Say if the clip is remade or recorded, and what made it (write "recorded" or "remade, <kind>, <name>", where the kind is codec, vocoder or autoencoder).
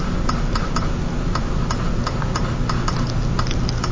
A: recorded